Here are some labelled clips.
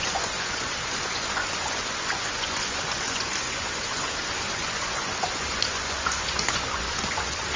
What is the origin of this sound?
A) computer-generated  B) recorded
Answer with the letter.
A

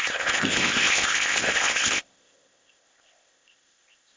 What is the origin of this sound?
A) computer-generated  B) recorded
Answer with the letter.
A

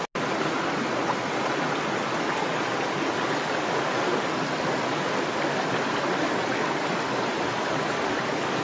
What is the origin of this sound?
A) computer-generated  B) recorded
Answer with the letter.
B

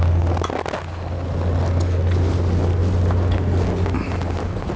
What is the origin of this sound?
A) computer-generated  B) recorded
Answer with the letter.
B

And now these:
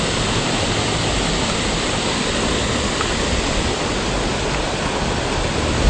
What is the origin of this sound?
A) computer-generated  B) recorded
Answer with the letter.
B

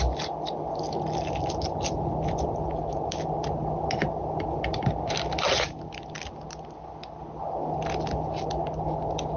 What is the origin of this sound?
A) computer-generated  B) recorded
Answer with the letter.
B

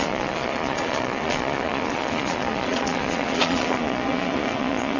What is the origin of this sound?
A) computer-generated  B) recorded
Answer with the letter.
A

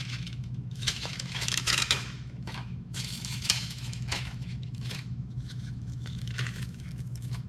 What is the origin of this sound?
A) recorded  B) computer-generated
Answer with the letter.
B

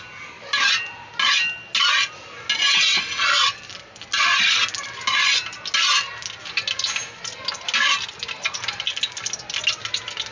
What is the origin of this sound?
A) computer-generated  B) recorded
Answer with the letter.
B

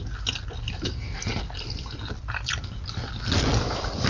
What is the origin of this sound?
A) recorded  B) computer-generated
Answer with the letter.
A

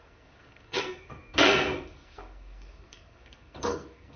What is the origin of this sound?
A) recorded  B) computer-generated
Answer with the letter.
B